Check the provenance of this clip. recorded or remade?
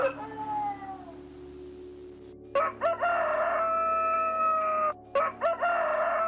recorded